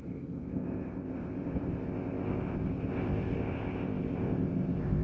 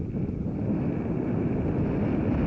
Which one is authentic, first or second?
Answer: second